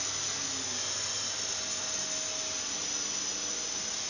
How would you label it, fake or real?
real